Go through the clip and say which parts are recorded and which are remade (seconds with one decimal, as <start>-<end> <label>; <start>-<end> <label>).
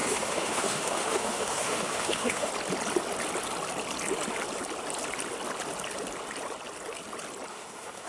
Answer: 0.0-2.5 remade; 2.5-7.5 recorded; 7.5-8.1 remade